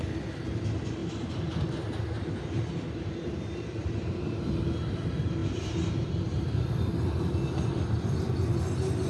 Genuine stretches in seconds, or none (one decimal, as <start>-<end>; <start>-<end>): 0.0-9.1